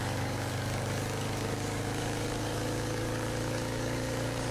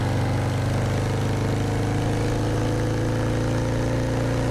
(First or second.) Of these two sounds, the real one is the second